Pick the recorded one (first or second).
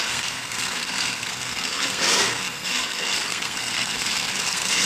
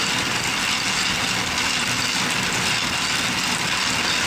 second